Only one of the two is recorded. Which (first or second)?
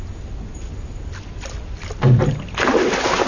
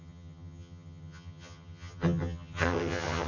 first